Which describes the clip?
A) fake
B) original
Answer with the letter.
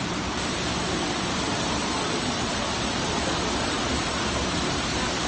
A